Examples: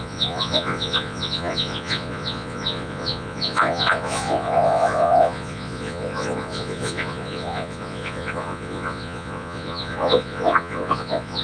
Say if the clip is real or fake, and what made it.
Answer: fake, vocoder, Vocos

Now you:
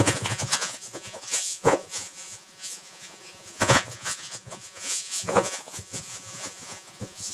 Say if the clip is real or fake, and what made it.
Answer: fake, vocoder, Vocos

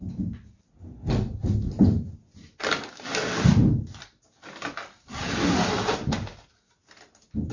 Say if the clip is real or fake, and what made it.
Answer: real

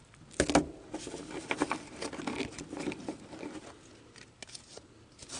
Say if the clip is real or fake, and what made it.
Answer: real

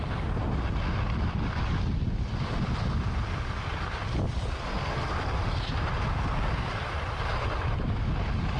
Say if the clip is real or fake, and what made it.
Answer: real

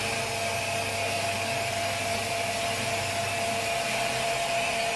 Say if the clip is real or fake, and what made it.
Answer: real